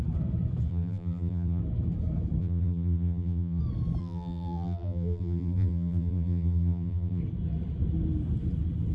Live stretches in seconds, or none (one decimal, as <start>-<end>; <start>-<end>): 0.0-0.7; 1.6-2.4; 3.6-4.0; 7.2-8.9